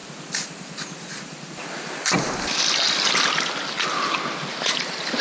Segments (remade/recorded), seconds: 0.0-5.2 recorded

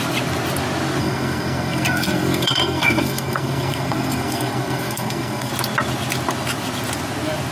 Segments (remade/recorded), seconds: 0.0-1.0 recorded; 1.0-5.5 remade; 5.5-7.5 recorded

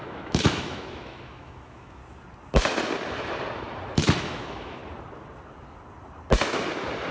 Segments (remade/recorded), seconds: 0.0-2.0 remade; 2.0-4.2 recorded; 4.2-4.8 remade; 4.8-7.1 recorded

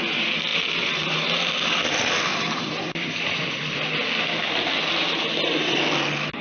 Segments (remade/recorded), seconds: 0.0-2.3 recorded; 2.3-3.4 remade; 3.4-5.0 recorded; 5.0-5.8 remade; 5.8-6.4 recorded

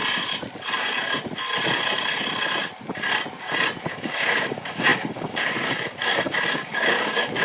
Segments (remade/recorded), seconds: 0.0-3.9 recorded; 3.9-7.4 remade

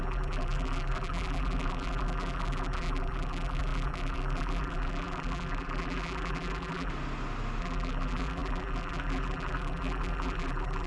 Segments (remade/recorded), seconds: 0.0-6.9 remade; 6.9-7.6 recorded; 7.6-10.9 remade

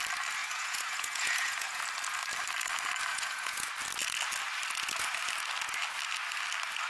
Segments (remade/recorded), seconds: 0.0-0.4 recorded; 0.4-1.8 remade; 1.8-3.1 recorded; 3.1-3.7 remade; 3.7-6.9 recorded